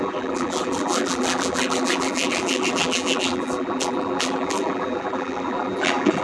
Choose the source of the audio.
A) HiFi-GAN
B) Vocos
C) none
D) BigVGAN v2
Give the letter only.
D